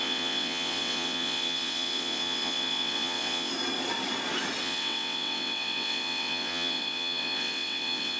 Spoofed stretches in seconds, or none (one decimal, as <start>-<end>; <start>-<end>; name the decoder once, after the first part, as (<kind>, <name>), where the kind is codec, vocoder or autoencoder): 0.0-3.5 (vocoder, WaveNeXt); 4.6-8.2